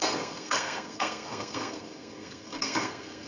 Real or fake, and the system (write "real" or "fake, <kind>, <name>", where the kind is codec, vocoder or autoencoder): fake, codec, SNAC